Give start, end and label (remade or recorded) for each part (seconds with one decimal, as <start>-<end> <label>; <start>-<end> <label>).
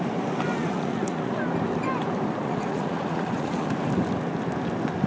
0.0-0.6 recorded; 0.6-1.4 remade; 1.4-2.4 recorded; 2.4-3.7 remade; 3.7-5.1 recorded